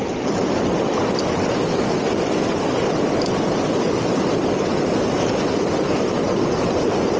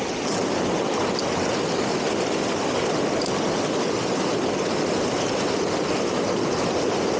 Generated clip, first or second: first